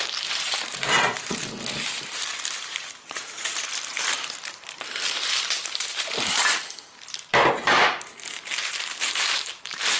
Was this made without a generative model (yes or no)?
no